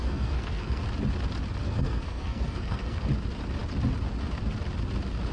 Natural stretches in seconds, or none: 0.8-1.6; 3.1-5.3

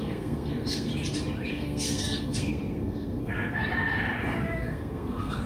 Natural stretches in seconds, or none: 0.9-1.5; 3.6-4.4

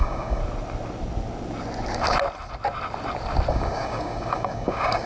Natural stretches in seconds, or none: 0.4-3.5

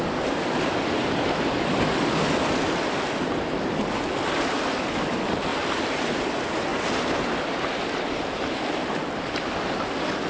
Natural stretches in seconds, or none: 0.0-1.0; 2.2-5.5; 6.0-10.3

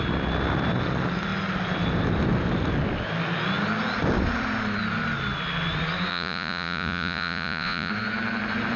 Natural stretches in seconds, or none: 0.0-6.1; 7.9-8.8

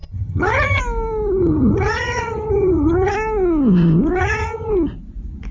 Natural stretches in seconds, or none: 0.8-1.4; 3.1-4.2; 4.7-5.5

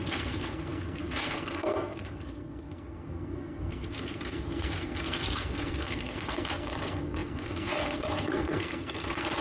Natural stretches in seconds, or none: none